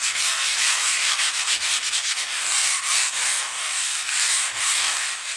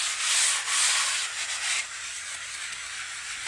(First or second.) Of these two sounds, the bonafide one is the second